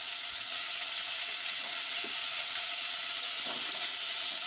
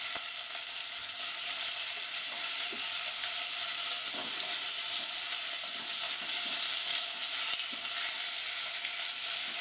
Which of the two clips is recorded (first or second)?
second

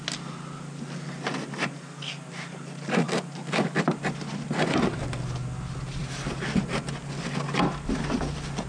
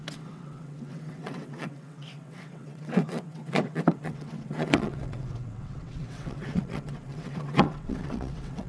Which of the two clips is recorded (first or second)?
first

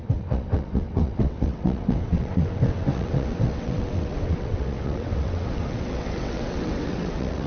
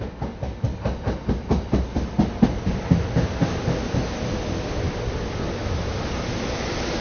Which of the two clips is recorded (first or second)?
second